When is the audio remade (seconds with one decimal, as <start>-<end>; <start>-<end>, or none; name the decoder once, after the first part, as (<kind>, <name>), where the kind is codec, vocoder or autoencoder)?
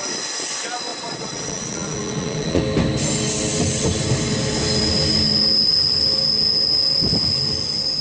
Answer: 0.9-2.6 (vocoder, Vocos)